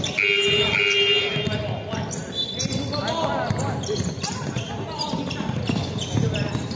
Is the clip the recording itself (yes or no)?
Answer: yes